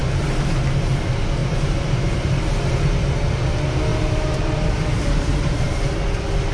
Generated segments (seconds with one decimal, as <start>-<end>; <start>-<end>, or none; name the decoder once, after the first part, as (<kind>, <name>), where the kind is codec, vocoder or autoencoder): 1.4-2.5 (vocoder, BigVGAN v2); 3.9-6.0